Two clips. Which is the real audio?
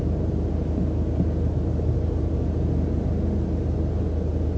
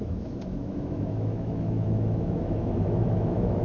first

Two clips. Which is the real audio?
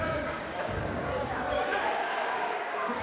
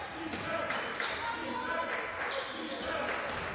second